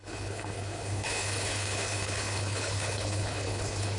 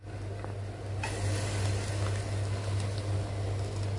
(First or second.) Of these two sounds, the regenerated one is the first